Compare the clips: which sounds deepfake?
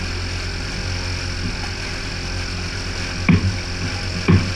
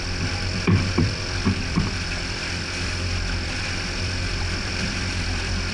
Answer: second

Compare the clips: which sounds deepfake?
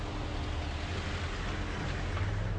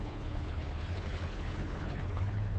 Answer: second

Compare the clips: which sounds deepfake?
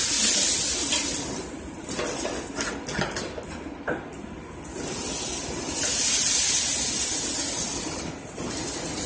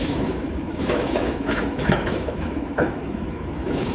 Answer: second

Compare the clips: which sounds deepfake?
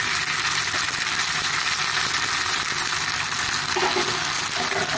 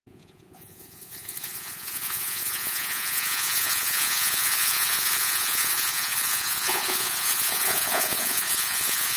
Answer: second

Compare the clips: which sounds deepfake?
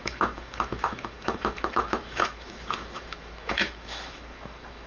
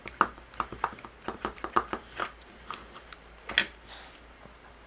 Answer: first